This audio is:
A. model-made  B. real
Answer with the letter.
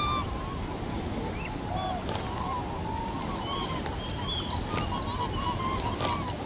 B